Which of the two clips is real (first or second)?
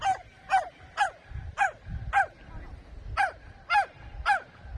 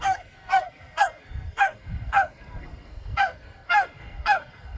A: first